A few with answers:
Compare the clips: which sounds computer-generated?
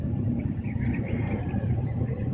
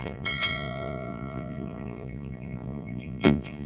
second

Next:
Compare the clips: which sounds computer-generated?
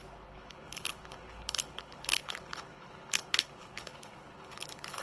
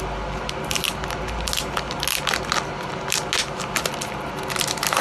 first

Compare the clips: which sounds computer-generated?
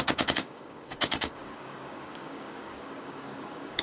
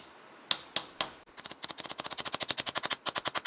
first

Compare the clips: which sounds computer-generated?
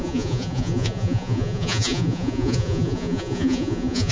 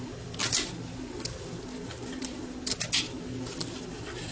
first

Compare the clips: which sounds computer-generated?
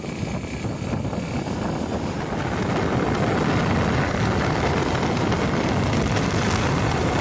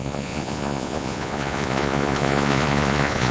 second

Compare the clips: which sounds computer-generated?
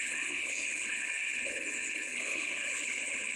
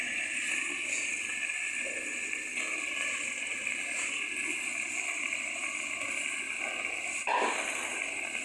first